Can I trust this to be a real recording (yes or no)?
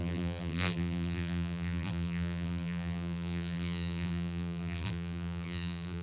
no